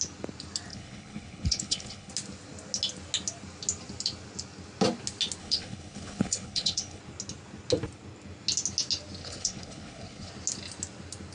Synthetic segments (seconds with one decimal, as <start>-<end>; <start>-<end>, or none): 0.7-2.1; 5.4-7.0; 9.2-10.3